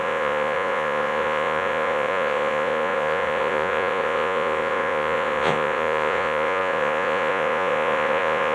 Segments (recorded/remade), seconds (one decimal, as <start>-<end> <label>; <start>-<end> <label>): 0.0-8.5 remade